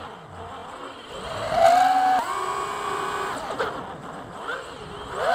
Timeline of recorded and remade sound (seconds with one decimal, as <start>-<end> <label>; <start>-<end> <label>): 0.0-5.3 recorded